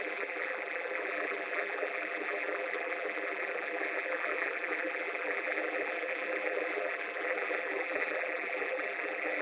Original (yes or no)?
no